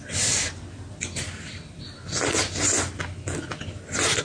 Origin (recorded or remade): recorded